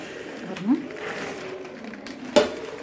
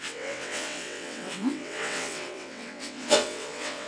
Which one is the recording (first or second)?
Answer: first